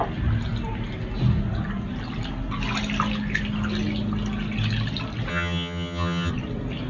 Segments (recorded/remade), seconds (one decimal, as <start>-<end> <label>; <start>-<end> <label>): 0.0-5.3 recorded; 5.3-6.3 remade; 6.3-6.9 recorded